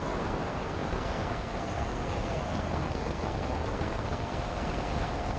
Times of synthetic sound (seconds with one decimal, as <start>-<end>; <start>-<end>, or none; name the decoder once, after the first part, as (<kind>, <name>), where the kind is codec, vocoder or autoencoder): 0.0-5.4 (codec, SNAC)